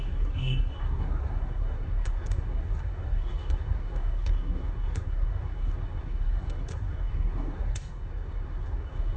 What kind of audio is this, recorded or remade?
remade